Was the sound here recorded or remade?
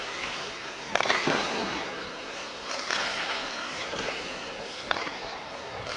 remade